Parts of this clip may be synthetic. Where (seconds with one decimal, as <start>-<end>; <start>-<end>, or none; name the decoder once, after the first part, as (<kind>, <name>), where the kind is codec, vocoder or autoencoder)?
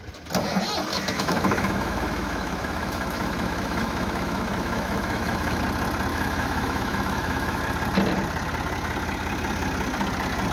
0.9-5.6 (autoencoder, DAC-VAE); 6.1-7.6